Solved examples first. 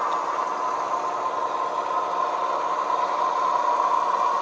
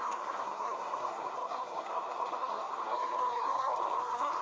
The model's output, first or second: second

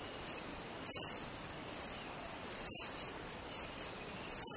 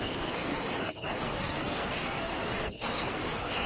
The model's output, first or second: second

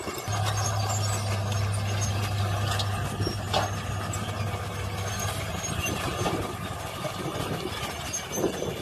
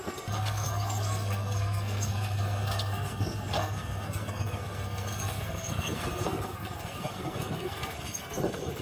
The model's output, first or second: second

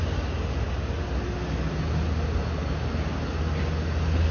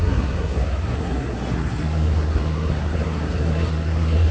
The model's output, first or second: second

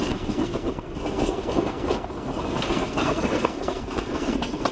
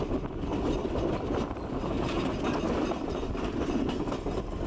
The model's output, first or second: first